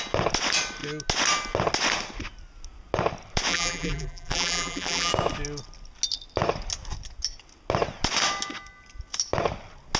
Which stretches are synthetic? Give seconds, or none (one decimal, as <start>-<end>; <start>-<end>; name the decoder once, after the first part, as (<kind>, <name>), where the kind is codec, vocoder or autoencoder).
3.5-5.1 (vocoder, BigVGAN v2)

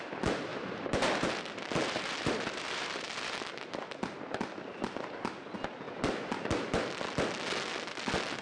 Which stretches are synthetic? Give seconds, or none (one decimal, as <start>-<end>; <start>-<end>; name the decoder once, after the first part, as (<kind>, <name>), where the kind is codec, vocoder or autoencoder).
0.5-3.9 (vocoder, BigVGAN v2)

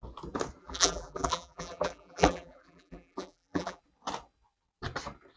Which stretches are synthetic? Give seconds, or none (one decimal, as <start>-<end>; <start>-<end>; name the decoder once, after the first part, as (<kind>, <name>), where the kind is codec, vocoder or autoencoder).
0.6-3.8 (vocoder, BigVGAN v2)

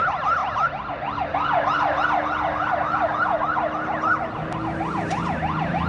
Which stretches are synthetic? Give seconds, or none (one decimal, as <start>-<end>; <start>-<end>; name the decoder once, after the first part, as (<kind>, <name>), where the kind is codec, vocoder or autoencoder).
none

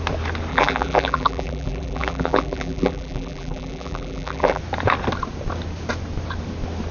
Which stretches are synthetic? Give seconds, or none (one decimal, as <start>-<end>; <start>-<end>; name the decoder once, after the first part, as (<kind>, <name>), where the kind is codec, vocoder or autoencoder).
0.5-4.6 (vocoder, BigVGAN v2)

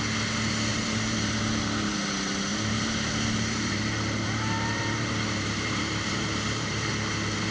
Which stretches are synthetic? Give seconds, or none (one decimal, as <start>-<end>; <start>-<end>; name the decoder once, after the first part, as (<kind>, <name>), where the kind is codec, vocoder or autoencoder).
0.7-1.4 (vocoder, BigVGAN v2); 2.5-6.9

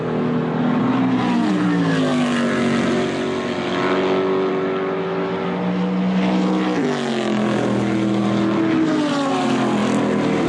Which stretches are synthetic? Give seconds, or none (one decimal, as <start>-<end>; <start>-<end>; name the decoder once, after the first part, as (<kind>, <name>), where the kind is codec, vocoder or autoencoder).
none